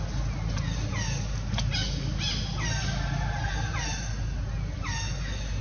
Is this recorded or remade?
recorded